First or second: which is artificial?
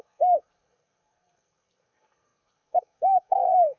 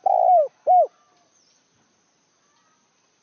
first